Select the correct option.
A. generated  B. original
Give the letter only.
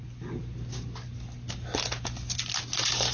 B